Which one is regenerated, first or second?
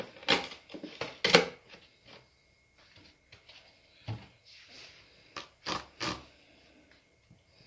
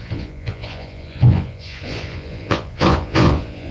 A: second